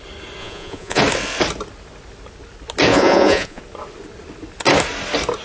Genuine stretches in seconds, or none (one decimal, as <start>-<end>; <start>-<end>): 0.0-0.4; 1.0-2.9; 3.6-5.4